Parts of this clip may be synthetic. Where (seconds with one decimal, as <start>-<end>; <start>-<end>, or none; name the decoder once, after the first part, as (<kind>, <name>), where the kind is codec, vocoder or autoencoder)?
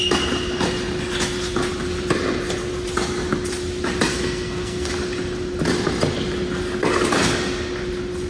4.1-4.9 (codec, SNAC)